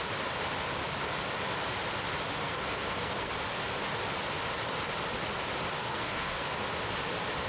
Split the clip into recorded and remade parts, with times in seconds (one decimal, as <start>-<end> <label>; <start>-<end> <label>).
0.0-2.4 recorded; 2.4-3.3 remade; 3.3-5.8 recorded; 5.8-6.5 remade; 6.5-7.5 recorded